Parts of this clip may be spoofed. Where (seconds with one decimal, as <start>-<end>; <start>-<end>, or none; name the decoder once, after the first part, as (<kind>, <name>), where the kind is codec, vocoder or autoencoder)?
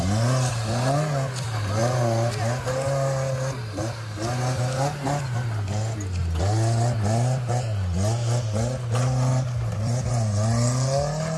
9.3-10.1 (vocoder, BigVGAN v2)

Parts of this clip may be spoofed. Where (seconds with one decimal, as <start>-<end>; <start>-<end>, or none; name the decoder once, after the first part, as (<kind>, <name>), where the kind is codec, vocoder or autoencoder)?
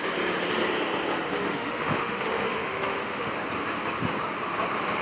1.5-3.3 (autoencoder, DAC-VAE)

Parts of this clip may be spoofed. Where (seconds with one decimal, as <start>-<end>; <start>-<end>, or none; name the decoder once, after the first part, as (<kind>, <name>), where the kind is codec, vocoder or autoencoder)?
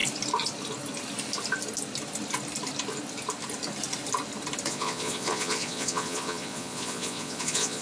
4.7-7.8 (vocoder, Vocos)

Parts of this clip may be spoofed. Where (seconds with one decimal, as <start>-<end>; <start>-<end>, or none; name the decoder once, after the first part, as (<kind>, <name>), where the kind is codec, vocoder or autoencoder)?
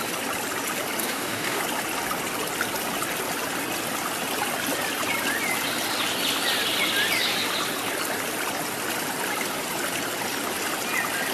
1.0-1.6 (codec, DAC)